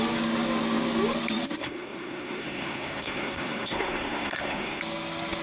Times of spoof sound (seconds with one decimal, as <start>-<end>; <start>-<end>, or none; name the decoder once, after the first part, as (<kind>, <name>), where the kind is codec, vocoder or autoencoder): 1.6-4.8 (codec, SNAC)